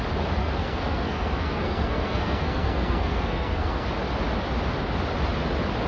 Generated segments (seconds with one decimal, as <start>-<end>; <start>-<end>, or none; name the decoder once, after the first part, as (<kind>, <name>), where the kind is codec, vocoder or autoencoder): 0.4-3.9 (codec, SNAC)